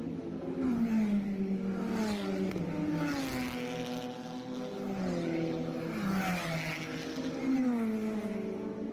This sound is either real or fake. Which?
real